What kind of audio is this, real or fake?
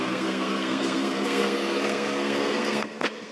fake